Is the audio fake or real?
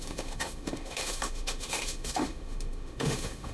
fake